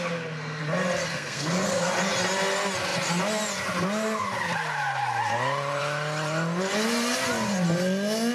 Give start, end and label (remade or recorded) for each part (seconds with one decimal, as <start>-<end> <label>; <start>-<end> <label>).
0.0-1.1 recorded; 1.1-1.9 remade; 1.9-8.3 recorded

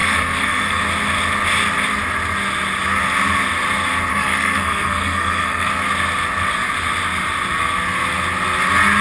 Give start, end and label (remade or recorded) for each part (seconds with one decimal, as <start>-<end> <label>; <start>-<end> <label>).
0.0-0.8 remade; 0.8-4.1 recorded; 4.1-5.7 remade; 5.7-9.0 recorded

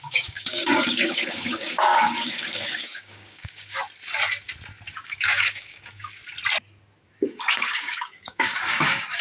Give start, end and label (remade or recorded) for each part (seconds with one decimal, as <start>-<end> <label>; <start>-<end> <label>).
0.0-3.8 remade; 3.8-4.9 recorded; 4.9-6.2 remade; 6.2-7.3 recorded; 7.3-9.2 remade